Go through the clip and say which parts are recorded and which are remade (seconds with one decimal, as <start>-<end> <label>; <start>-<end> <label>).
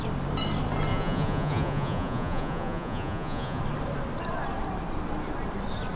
0.0-0.9 recorded; 0.9-3.6 remade; 3.6-6.0 recorded